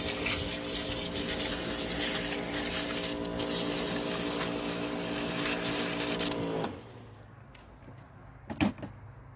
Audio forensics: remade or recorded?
recorded